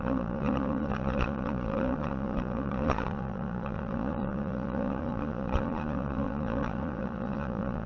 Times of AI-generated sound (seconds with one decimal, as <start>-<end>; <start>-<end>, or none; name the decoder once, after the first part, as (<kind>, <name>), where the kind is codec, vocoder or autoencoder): 0.0-7.9 (vocoder, Vocos)